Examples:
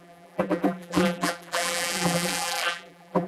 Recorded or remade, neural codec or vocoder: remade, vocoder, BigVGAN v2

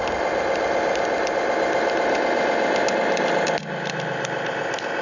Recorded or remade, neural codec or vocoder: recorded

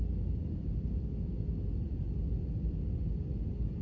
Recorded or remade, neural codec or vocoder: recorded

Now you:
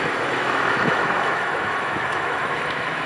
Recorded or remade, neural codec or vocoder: remade, autoencoder, DAC-VAE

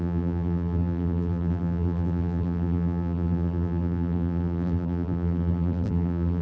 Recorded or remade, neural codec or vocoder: remade, vocoder, BigVGAN v2